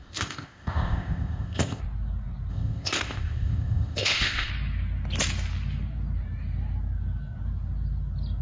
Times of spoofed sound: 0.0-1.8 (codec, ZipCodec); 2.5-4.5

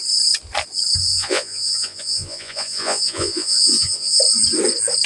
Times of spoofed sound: 1.1-4.2 (vocoder, Vocos)

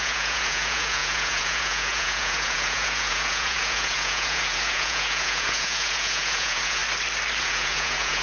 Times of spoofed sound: 0.0-6.8 (vocoder, Vocos); 7.4-8.2

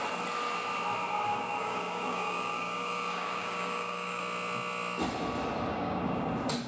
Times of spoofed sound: 1.3-4.2 (codec, DAC); 5.7-6.3

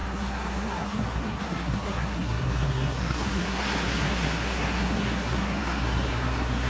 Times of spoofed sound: 0.0-6.7 (codec, SNAC)